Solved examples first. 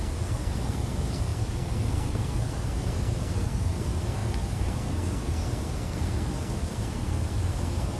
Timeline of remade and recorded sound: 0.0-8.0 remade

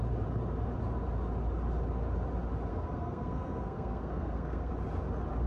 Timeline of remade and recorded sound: 0.0-2.7 recorded; 2.7-4.7 remade; 4.7-5.5 recorded

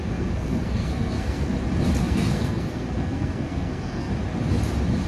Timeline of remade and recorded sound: 0.0-1.5 remade; 1.5-2.0 recorded; 2.0-4.1 remade; 4.1-5.1 recorded

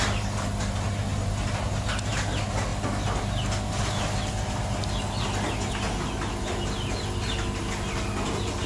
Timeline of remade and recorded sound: 0.0-8.7 recorded